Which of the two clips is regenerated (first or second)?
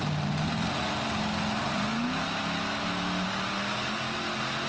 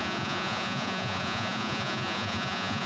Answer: second